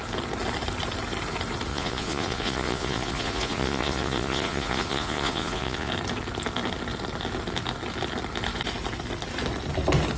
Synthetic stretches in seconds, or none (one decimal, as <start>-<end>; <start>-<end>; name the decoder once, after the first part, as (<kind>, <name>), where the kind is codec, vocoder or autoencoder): 1.7-5.9 (vocoder, Vocos)